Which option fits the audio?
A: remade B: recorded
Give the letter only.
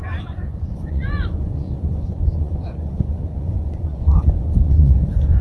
A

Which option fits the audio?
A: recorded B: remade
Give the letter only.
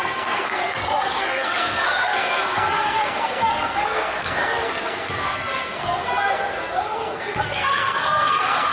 B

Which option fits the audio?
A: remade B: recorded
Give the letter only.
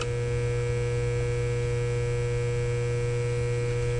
B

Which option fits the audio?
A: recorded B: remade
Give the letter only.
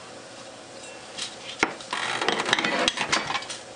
A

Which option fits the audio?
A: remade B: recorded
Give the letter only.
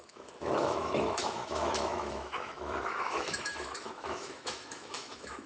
A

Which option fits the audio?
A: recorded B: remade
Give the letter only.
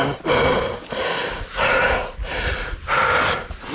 A